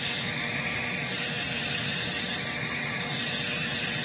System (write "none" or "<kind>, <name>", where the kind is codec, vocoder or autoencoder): none